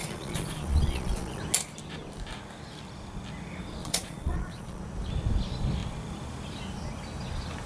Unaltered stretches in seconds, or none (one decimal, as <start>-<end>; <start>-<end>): 1.4-3.8; 4.8-7.7